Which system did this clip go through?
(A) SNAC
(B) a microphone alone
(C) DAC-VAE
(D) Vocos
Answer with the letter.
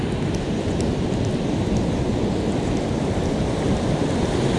B